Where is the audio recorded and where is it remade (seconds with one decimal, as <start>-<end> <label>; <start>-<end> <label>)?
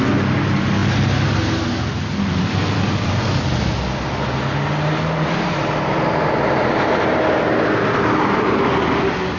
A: 0.0-9.4 recorded